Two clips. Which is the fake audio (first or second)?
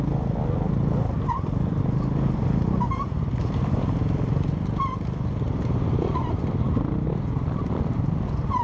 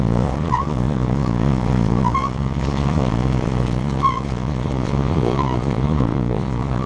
second